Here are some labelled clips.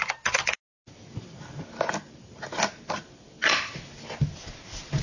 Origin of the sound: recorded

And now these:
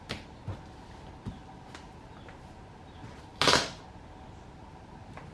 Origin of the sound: recorded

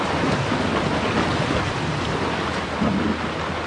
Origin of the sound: recorded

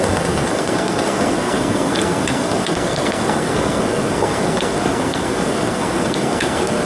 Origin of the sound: remade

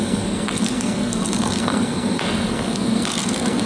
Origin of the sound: remade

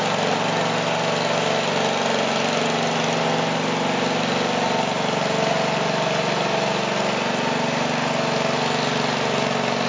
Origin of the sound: recorded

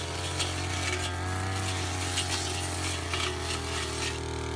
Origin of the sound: recorded